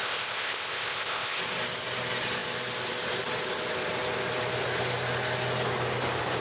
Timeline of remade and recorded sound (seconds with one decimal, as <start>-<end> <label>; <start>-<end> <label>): 0.0-1.4 remade; 1.4-6.4 recorded